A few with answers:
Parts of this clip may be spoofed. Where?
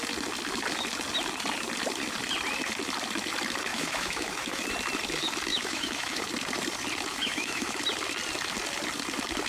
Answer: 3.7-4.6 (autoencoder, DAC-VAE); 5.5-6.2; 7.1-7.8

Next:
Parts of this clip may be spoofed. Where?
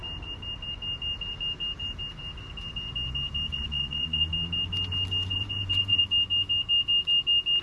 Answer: 3.5-4.3 (vocoder, Vocos); 5.3-6.0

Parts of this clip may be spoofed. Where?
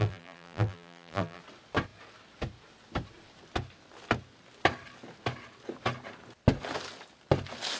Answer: 0.0-1.4 (vocoder, BigVGAN v2)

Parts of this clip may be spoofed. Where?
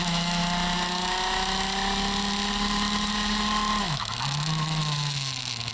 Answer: 0.0-0.4 (autoencoder, DAC-VAE); 3.8-5.7